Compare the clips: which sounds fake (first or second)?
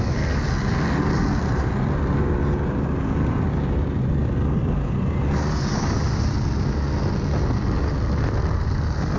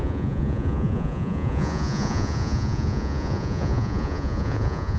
second